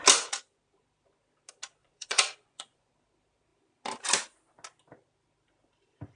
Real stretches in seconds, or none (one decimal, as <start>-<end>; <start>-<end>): 0.0-1.8; 2.9-6.2